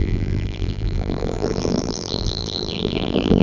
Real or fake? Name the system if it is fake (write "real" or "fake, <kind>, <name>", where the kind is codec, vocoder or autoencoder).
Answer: fake, vocoder, BigVGAN v2